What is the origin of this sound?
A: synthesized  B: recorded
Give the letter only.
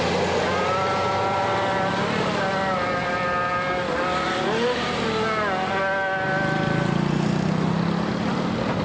B